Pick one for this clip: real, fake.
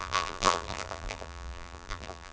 fake